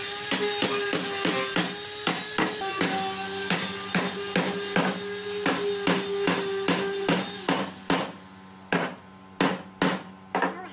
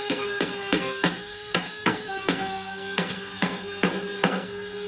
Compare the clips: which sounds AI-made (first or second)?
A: second